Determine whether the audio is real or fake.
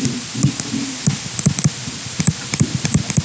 fake